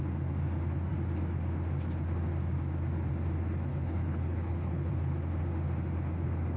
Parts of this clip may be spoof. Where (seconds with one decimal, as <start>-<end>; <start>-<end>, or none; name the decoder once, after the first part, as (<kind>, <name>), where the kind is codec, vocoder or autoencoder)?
3.7-4.9 (codec, HILCodec)